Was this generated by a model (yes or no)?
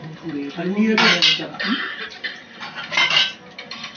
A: yes